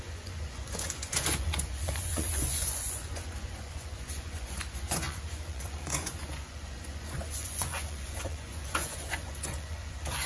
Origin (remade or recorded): remade